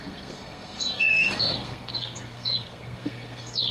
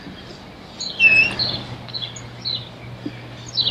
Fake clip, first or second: first